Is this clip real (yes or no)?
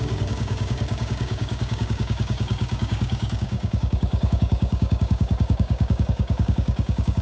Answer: no